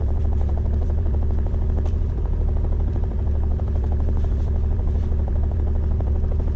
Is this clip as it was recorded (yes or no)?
no